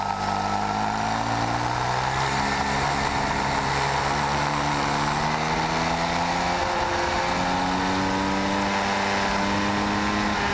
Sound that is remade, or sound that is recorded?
recorded